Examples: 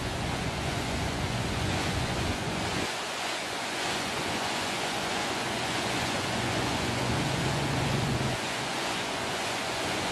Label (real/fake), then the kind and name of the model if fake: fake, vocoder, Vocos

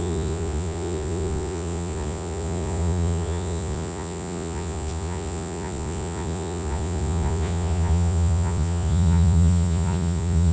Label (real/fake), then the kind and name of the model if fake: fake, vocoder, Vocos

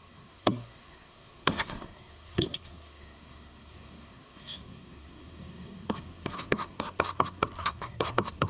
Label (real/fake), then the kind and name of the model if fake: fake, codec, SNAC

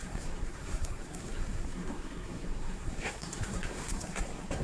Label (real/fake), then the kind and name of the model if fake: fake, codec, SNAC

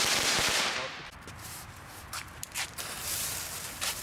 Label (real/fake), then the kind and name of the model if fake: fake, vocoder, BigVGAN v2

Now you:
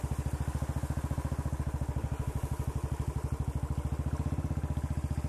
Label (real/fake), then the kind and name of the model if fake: real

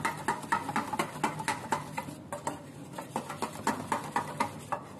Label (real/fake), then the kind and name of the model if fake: real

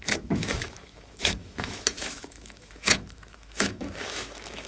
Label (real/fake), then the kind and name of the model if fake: fake, autoencoder, DAC-VAE